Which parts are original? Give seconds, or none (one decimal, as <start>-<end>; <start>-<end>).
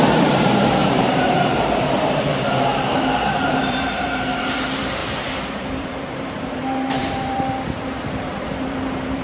2.7-3.4; 5.0-5.8